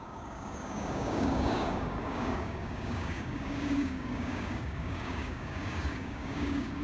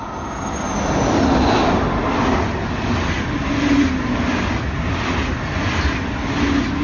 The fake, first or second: first